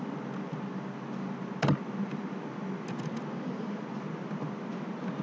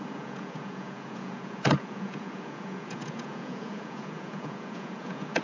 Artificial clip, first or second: second